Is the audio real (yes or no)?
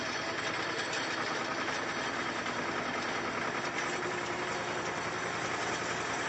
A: yes